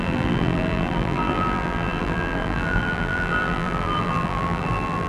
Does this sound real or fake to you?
fake